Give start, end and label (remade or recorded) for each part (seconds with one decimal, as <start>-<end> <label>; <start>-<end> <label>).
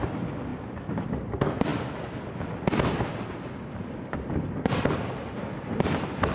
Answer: 0.0-0.5 recorded; 0.5-1.1 remade; 1.1-6.3 recorded